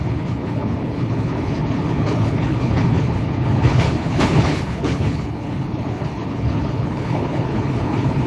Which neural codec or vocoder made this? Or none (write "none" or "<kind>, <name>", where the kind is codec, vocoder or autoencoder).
codec, HILCodec